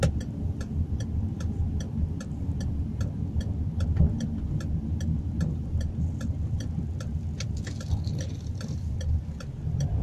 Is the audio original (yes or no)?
yes